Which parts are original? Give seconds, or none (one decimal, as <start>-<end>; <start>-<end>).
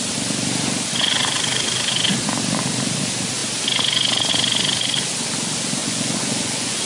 0.0-5.8